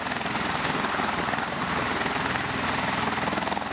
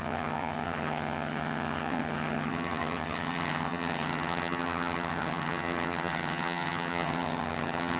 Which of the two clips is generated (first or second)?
second